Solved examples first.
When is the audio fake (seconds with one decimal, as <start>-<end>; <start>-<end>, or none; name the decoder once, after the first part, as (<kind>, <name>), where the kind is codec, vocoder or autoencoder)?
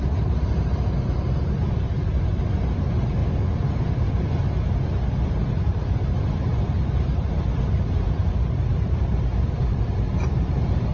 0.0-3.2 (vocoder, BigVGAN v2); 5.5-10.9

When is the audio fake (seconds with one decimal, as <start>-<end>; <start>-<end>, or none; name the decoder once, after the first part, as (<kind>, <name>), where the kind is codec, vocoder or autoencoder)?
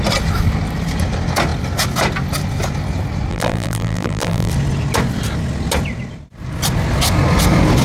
3.3-4.5 (vocoder, BigVGAN v2)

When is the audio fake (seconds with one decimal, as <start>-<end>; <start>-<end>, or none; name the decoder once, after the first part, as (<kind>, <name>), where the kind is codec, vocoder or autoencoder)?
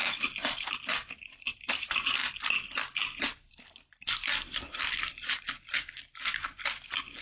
0.0-2.2 (vocoder, BigVGAN v2); 3.0-5.8; 6.4-7.2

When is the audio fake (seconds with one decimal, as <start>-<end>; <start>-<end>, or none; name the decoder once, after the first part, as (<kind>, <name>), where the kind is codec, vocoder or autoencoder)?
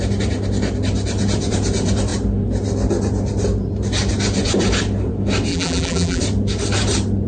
5.5-6.2 (vocoder, BigVGAN v2)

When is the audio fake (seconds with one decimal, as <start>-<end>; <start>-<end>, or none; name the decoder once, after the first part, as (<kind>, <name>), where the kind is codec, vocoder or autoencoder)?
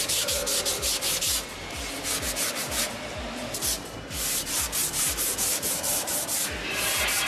0.0-0.4 (vocoder, BigVGAN v2); 2.2-7.3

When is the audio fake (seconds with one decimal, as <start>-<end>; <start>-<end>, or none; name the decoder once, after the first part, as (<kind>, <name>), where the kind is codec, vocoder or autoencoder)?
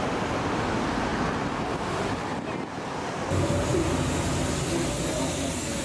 none